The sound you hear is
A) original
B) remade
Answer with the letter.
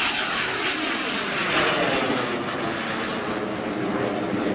A